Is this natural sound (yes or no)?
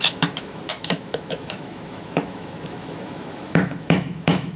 no